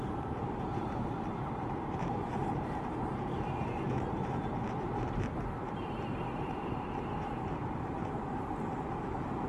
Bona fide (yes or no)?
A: no